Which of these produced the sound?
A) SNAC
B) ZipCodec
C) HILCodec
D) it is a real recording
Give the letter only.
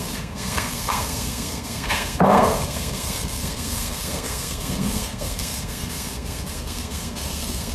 A